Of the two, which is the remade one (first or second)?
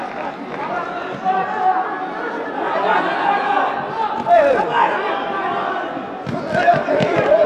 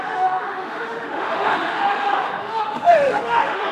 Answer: second